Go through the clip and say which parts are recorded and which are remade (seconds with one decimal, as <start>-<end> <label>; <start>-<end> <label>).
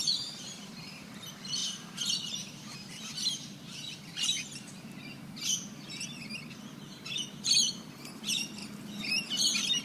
0.0-8.6 remade; 8.6-9.4 recorded; 9.4-9.8 remade